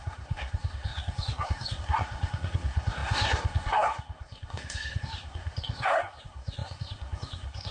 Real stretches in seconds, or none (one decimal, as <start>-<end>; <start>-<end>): none